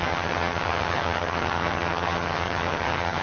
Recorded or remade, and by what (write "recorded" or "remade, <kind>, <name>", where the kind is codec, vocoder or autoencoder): remade, vocoder, HiFi-GAN